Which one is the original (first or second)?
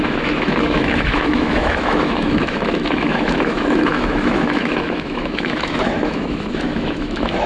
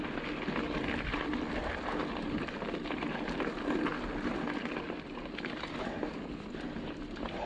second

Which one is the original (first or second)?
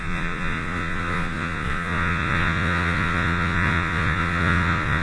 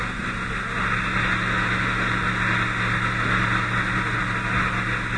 second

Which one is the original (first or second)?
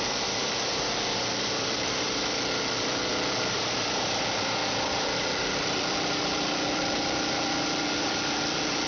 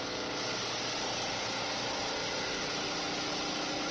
second